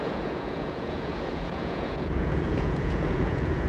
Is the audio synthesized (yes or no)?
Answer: yes